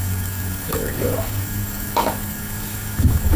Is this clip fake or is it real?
fake